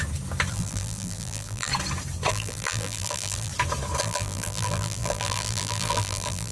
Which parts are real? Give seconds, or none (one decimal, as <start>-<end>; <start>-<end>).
0.0-0.5; 1.7-2.3; 3.5-4.0